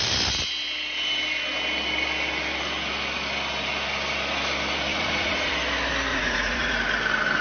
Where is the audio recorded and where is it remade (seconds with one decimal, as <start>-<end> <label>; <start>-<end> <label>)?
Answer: 0.0-4.9 recorded; 4.9-5.5 remade; 5.5-6.1 recorded; 6.1-6.7 remade; 6.7-7.4 recorded